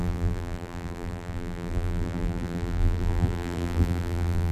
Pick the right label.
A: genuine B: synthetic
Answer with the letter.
B